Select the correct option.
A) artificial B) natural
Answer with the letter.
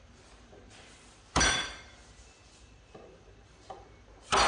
A